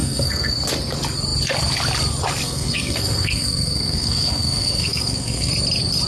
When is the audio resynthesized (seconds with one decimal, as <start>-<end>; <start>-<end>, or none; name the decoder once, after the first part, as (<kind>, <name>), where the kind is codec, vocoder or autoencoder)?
0.0-0.5 (codec, SNAC); 2.4-5.5